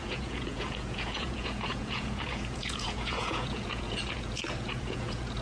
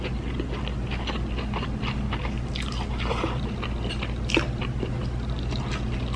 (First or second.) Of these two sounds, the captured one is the second